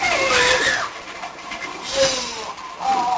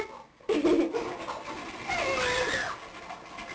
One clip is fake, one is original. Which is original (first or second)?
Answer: second